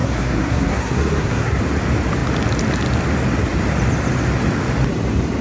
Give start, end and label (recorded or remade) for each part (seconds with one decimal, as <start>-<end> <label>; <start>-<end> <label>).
0.0-1.6 remade; 1.6-5.4 recorded